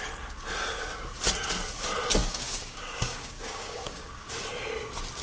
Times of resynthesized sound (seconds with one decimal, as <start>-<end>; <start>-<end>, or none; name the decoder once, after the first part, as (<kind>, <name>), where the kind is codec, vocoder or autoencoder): 2.2-4.3 (codec, DAC)